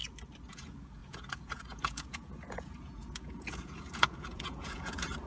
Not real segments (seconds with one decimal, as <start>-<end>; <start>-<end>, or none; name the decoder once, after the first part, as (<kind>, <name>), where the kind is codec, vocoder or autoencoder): 0.5-5.3 (vocoder, Vocos)